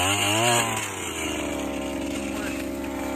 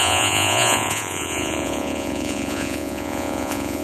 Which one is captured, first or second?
first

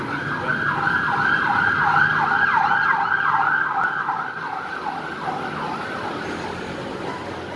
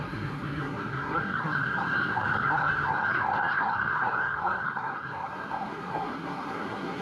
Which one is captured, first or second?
first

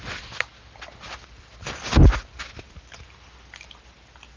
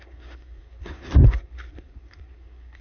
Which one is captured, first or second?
first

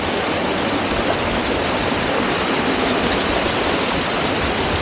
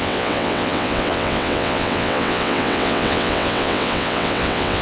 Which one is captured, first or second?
first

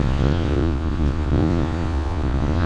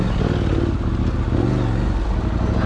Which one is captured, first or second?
second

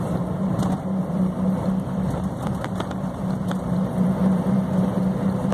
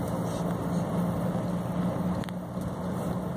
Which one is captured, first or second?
second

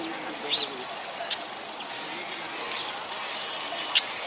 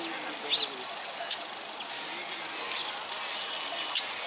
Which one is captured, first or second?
second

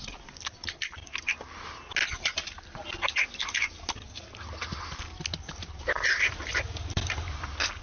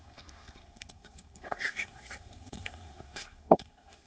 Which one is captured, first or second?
first